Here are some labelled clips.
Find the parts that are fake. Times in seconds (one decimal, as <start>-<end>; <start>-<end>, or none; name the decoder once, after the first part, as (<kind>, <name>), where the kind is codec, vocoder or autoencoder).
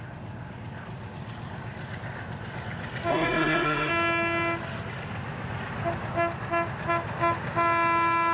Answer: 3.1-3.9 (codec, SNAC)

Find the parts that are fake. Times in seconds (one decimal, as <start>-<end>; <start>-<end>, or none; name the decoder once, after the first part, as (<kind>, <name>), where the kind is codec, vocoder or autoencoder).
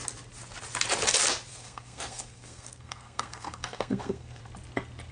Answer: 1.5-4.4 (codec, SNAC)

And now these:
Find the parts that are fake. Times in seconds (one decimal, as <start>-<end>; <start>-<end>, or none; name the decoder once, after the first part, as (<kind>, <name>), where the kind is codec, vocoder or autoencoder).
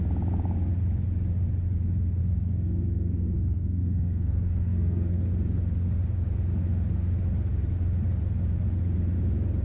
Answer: 2.2-5.3 (codec, SNAC)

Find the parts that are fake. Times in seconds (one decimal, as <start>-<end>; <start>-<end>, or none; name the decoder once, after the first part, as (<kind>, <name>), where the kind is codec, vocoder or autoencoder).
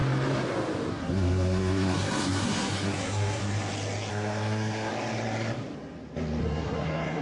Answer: 0.9-3.4 (codec, SNAC); 4.1-4.9; 6.4-7.2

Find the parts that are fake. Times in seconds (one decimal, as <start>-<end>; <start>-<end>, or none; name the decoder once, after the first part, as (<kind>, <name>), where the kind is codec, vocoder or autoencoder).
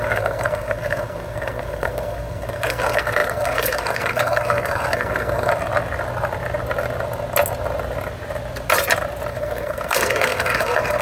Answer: 0.0-5.5 (codec, SNAC); 9.3-11.0